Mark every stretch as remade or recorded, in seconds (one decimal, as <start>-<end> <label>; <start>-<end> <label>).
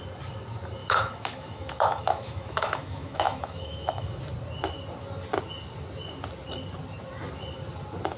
0.0-0.8 recorded; 0.8-4.2 remade; 4.2-8.2 recorded